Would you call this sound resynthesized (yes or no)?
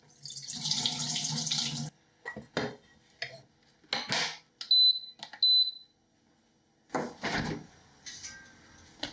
no